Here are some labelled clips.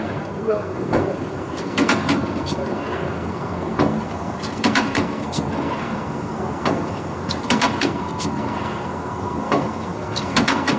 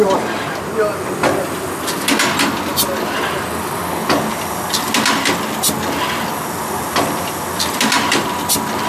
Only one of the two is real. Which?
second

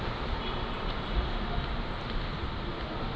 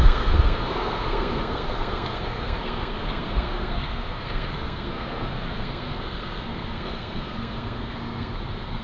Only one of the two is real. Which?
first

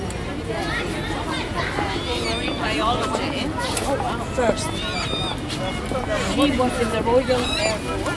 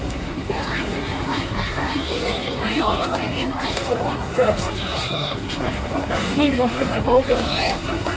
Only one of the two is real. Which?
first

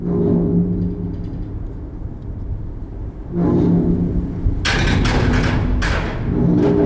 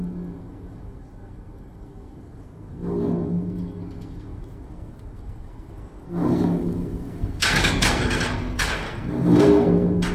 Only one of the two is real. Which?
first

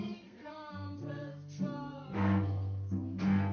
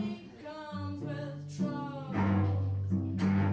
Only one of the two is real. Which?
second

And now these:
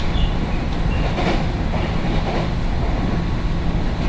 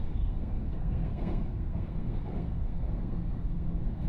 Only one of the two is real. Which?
first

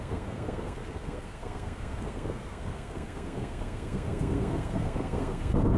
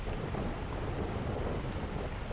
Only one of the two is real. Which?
second